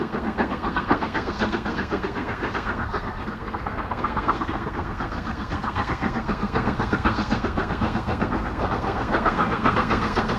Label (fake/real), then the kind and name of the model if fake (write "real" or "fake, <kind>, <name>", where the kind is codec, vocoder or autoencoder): fake, codec, SNAC